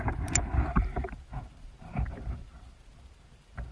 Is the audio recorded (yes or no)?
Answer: no